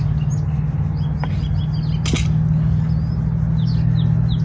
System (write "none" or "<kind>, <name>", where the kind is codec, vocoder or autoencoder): none